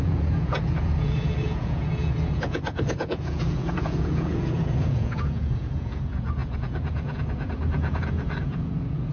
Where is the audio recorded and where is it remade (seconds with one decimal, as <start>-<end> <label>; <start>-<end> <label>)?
0.0-9.1 remade